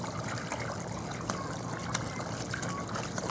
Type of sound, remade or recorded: recorded